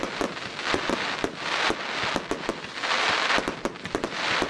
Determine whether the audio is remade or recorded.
recorded